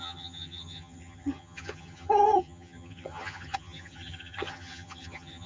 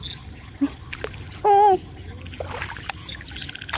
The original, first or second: second